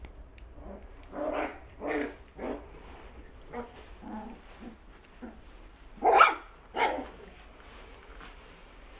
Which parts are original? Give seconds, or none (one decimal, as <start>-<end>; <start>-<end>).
0.0-9.0